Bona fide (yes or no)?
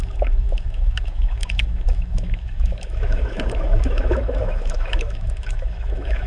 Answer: no